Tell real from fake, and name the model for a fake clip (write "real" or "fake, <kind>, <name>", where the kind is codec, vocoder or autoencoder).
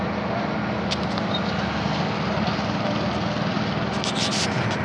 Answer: real